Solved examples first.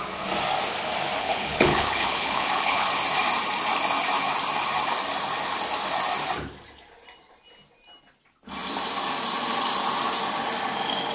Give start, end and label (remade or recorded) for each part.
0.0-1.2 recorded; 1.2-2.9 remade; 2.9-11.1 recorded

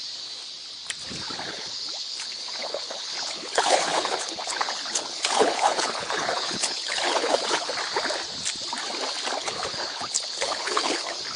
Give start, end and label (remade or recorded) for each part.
0.0-1.5 recorded; 1.5-7.7 remade; 7.7-9.4 recorded; 9.4-11.4 remade

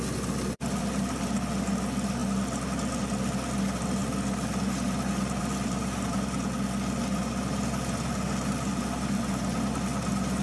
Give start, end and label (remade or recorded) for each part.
0.0-10.4 recorded

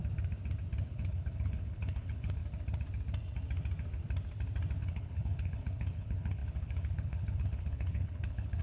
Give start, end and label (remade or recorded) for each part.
0.0-0.9 recorded; 0.9-2.4 remade; 2.4-4.8 recorded; 4.8-8.6 remade